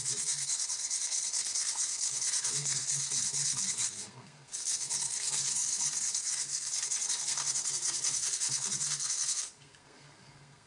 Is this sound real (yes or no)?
no